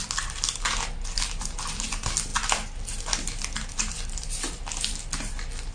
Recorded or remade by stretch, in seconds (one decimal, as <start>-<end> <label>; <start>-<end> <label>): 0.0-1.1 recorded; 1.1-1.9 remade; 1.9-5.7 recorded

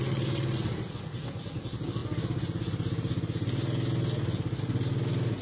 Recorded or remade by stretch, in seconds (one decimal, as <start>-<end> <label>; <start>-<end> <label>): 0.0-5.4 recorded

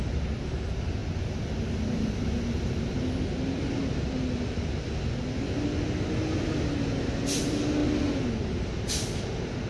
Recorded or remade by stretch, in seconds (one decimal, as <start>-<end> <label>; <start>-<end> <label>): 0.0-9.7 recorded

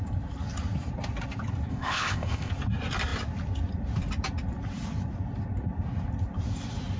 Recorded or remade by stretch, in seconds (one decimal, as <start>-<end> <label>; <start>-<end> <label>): 0.0-1.7 recorded; 1.7-2.5 remade; 2.5-7.0 recorded